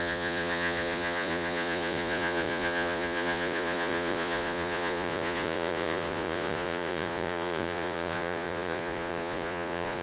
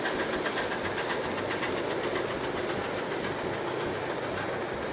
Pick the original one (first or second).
second